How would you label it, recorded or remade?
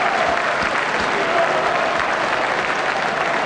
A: recorded